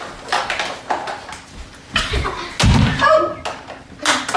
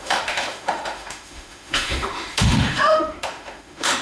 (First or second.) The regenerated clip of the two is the second